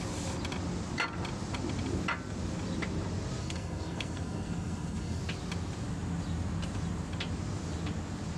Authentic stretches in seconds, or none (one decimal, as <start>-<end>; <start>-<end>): 0.0-3.4; 5.2-8.4